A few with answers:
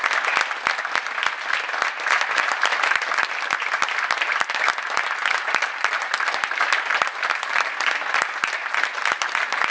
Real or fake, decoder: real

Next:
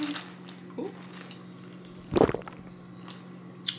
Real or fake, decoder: real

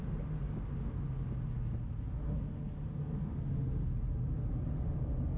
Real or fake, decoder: real